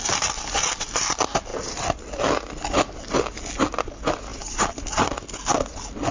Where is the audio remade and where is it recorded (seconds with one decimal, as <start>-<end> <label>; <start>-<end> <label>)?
0.0-6.1 recorded